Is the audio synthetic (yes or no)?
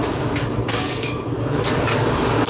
yes